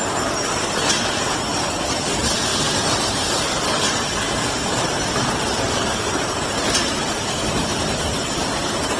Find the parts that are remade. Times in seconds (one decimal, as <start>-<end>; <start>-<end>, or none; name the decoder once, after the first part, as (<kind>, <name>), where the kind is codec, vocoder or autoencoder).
2.5-6.5 (vocoder, BigVGAN v2)